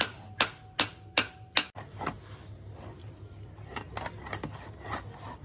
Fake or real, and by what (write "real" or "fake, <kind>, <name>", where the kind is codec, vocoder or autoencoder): real